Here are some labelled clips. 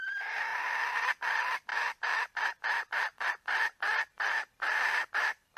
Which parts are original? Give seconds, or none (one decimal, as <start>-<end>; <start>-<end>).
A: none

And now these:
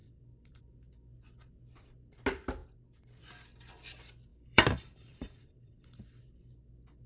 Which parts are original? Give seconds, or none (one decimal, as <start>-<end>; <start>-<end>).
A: 0.6-4.3; 6.2-7.1

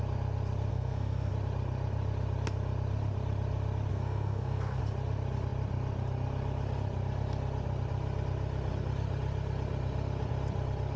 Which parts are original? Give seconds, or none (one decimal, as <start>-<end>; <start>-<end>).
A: 0.0-0.7; 1.3-3.9; 4.8-11.0